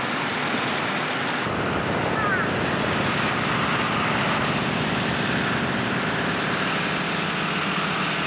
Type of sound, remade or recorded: recorded